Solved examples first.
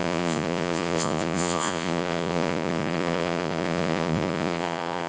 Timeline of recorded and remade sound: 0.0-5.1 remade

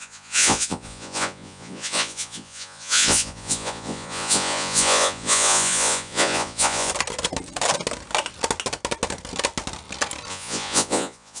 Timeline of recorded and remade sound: 0.0-6.9 remade; 6.9-10.3 recorded; 10.3-11.4 remade

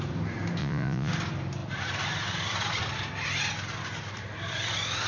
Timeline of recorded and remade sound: 0.0-0.6 recorded; 0.6-1.1 remade; 1.1-5.1 recorded

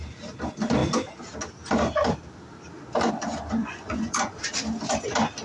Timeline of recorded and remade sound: 0.0-3.6 recorded; 3.6-4.4 remade; 4.4-5.4 recorded

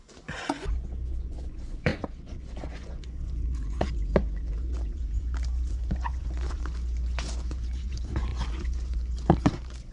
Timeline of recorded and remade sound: 0.0-9.9 remade

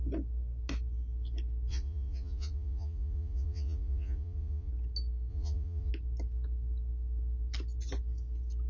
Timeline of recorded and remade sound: 0.0-1.7 recorded; 1.7-4.7 remade; 4.7-5.3 recorded; 5.3-5.9 remade; 5.9-8.7 recorded